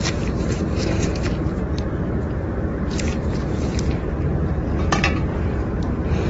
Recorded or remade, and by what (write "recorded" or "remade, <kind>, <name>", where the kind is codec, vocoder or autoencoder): remade, vocoder, BigVGAN v2